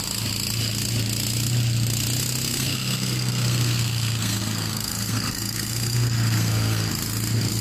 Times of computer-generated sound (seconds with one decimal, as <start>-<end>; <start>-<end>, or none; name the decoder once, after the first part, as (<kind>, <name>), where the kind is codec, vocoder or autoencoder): 2.5-6.9 (codec, SNAC)